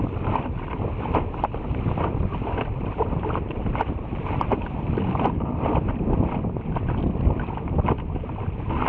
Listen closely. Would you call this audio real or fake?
fake